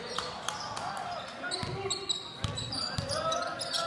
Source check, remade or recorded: recorded